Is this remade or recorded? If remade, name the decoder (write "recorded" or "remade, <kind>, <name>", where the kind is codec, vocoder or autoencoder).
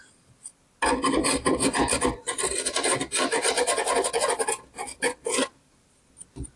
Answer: recorded